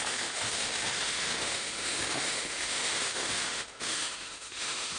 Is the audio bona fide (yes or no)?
no